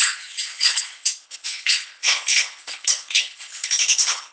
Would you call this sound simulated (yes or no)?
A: yes